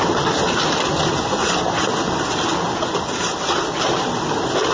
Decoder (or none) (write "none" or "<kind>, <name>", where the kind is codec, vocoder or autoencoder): none